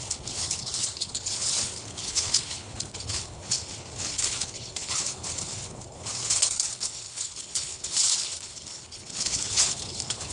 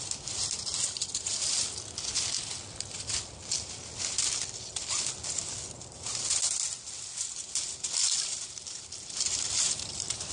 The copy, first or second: first